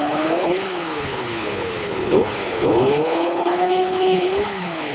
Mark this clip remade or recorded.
remade